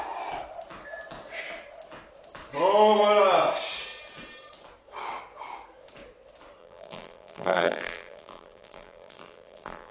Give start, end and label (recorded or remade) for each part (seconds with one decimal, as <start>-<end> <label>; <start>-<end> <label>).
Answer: 0.0-6.6 recorded; 6.6-9.9 remade